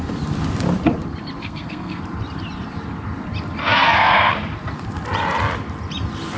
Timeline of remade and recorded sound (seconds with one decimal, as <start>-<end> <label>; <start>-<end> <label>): 0.0-1.4 recorded; 1.4-2.0 remade; 2.0-3.6 recorded; 3.6-4.3 remade; 4.3-6.4 recorded

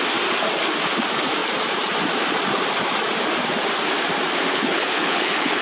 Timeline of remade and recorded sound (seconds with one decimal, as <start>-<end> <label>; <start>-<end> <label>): 0.0-4.5 recorded; 4.5-5.6 remade

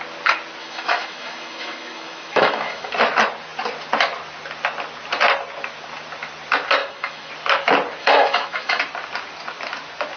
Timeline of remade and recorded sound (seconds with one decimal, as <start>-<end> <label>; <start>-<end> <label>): 0.0-0.6 recorded; 0.6-2.9 remade; 2.9-6.8 recorded; 6.8-7.3 remade; 7.3-8.0 recorded; 8.0-8.8 remade; 8.8-10.2 recorded

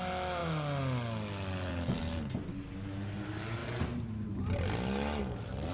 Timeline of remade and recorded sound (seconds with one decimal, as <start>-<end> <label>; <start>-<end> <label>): 0.0-5.7 recorded

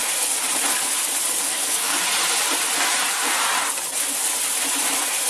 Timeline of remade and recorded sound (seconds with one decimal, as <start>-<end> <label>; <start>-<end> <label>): 0.0-1.4 recorded; 1.4-1.9 remade; 1.9-5.3 recorded

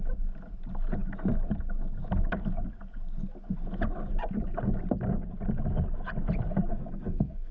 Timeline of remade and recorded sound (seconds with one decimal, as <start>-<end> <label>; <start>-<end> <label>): 0.0-6.7 recorded; 6.7-7.5 remade

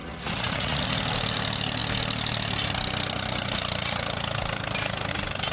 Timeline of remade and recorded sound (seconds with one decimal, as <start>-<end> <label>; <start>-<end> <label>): 0.0-0.8 remade; 0.8-5.5 recorded